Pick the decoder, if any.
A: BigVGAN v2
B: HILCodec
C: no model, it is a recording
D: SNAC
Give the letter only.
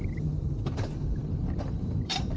A